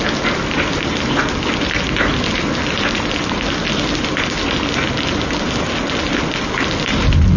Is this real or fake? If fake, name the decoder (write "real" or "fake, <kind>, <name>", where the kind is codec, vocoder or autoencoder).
real